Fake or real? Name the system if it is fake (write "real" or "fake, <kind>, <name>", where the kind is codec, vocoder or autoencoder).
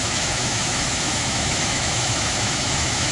fake, autoencoder, DAC-VAE